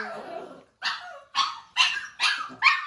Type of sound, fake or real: real